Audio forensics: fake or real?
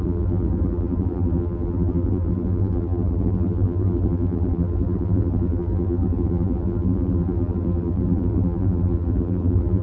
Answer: fake